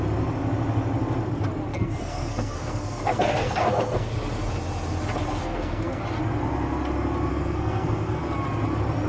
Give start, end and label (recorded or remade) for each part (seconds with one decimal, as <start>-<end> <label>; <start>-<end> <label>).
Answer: 0.0-1.7 recorded; 1.7-4.1 remade; 4.1-5.4 recorded; 5.4-6.0 remade; 6.0-7.3 recorded; 7.3-8.2 remade; 8.2-9.1 recorded